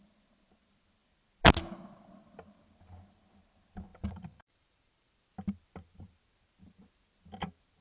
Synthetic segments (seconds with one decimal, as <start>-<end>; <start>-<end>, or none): 3.9-5.2